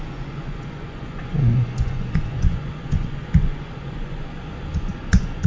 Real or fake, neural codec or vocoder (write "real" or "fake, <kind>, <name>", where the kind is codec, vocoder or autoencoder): fake, vocoder, Vocos